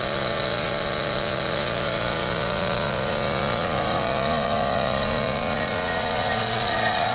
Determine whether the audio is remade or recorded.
remade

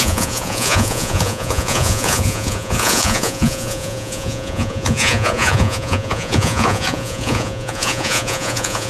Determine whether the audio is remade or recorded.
remade